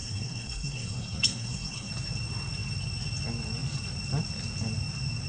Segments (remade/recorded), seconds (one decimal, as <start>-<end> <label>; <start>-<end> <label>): 0.0-1.9 remade; 1.9-5.3 recorded